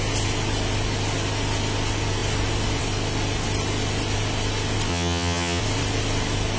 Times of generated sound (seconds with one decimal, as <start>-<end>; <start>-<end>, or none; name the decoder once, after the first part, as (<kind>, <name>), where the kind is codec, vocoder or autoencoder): 4.9-5.6 (vocoder, HiFi-GAN)